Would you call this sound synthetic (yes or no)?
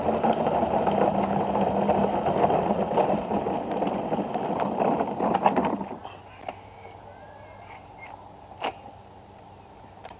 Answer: no